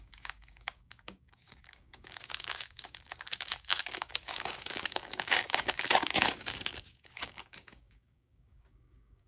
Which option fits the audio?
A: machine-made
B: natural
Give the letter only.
A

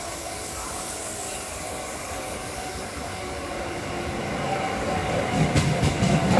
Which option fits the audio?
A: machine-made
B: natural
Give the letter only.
A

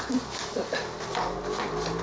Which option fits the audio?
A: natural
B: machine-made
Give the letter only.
A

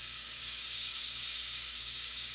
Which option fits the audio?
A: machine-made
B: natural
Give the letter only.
A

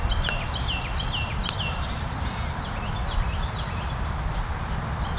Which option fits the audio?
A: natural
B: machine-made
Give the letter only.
A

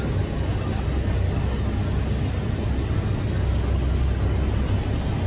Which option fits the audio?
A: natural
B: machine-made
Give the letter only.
A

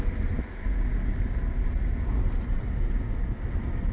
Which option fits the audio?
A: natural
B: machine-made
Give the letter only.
A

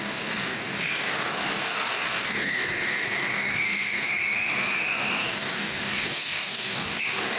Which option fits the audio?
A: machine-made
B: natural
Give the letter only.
A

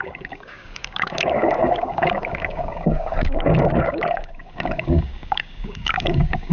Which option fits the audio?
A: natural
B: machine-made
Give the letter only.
B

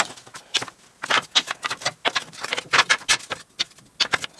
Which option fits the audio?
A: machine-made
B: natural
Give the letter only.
B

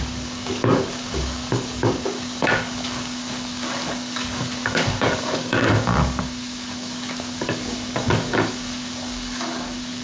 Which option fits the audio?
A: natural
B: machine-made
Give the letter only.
B